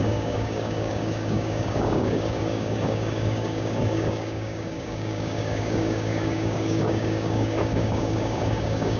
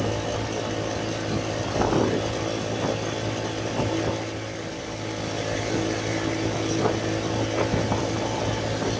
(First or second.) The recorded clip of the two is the second